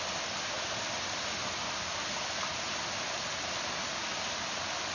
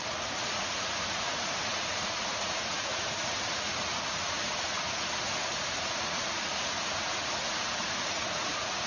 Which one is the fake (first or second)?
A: second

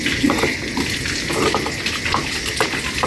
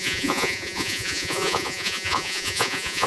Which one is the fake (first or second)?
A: second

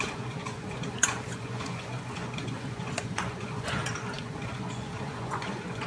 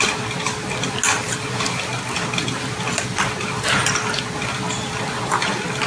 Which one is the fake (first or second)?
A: first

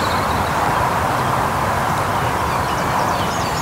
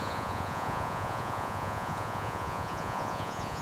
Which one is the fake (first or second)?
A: second